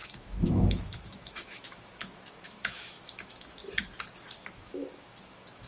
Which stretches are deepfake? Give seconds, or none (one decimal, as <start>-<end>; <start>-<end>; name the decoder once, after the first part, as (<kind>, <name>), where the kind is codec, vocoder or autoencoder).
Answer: 0.0-3.6 (autoencoder, DAC-VAE); 4.4-5.7